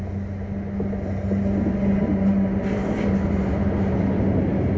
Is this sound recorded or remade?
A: recorded